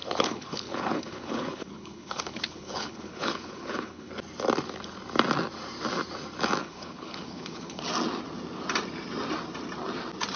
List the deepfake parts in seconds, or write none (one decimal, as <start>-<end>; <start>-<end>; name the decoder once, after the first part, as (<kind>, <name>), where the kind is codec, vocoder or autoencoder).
0.0-4.1 (codec, HILCodec); 6.6-7.8